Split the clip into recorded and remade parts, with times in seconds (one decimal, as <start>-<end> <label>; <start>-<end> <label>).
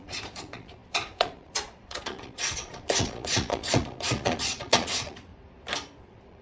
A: 0.0-5.3 remade; 5.3-6.0 recorded; 6.0-6.4 remade